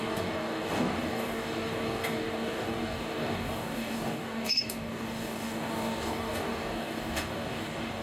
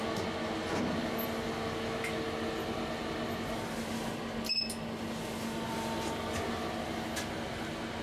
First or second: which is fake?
first